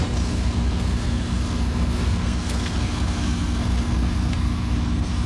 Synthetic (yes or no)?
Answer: yes